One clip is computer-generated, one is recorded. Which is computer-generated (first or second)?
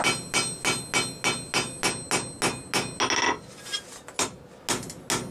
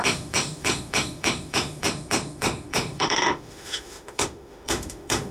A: second